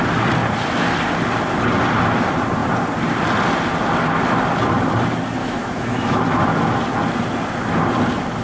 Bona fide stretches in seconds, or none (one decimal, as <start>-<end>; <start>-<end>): 0.0-5.4; 6.2-8.4

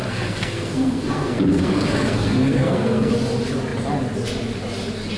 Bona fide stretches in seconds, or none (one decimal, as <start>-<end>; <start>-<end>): 3.1-5.2